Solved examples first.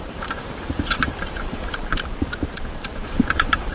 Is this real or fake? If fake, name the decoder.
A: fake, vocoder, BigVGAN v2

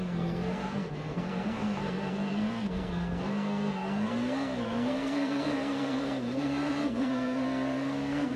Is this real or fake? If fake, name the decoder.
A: fake, codec, SNAC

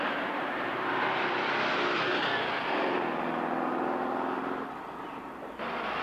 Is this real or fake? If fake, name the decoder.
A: real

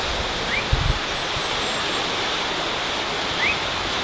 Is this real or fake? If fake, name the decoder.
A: real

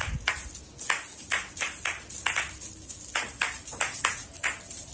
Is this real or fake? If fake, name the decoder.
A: real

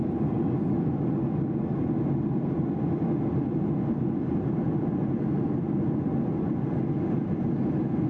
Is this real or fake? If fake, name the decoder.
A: real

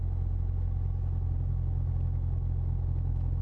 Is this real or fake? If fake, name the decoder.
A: real